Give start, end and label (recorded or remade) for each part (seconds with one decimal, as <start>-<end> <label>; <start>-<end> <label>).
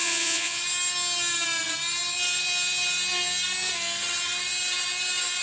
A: 0.0-0.6 remade; 0.6-5.4 recorded